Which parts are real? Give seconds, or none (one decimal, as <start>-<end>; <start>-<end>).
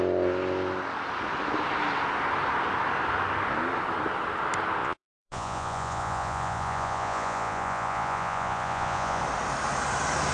0.0-4.8; 9.2-10.3